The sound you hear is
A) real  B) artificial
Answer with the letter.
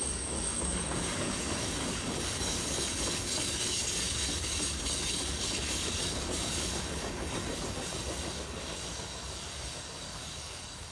B